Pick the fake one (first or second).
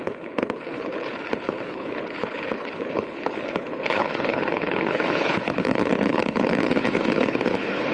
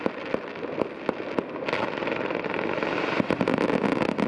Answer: first